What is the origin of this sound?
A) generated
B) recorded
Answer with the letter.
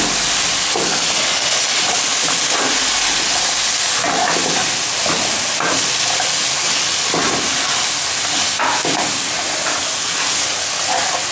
B